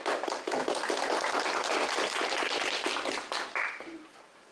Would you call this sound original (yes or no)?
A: yes